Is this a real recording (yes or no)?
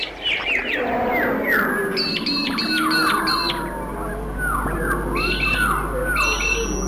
yes